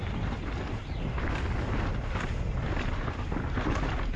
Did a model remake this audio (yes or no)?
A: no